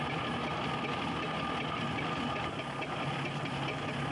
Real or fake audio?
real